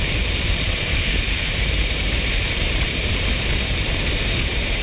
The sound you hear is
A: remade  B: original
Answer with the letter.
A